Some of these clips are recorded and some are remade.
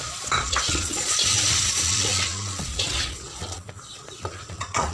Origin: remade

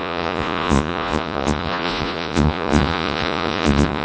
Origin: remade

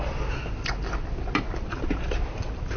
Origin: recorded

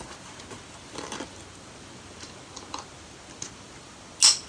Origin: recorded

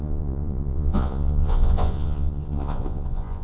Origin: remade